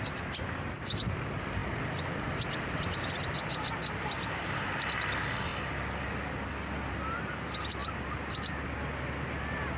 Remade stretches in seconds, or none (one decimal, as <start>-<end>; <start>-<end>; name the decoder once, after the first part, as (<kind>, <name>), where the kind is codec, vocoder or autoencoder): 0.0-1.6 (vocoder, BigVGAN v2); 3.1-9.8